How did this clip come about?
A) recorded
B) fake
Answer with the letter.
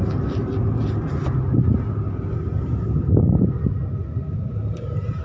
A